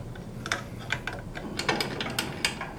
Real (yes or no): yes